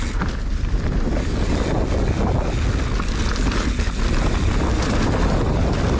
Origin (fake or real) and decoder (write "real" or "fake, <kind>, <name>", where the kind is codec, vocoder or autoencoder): real